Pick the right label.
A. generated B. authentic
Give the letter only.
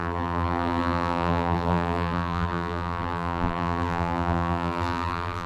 A